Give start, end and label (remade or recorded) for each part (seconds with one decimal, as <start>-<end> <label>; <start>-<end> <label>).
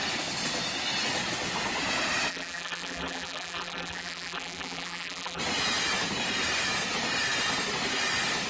0.0-2.3 recorded; 2.3-5.4 remade; 5.4-8.5 recorded